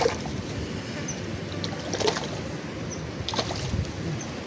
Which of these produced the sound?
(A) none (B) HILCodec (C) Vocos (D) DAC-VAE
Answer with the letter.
A